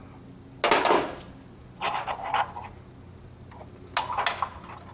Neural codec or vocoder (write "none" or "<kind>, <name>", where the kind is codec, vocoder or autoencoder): none